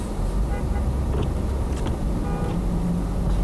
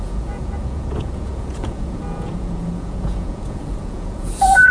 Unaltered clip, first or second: first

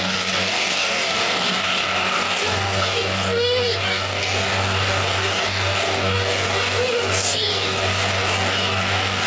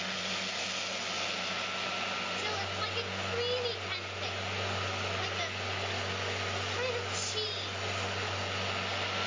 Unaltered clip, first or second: second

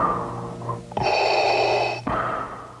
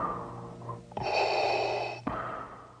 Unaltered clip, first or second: first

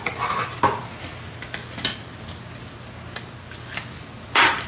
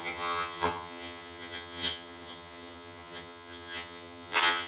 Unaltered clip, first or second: first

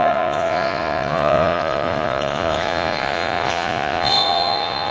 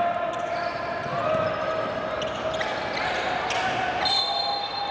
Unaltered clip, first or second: second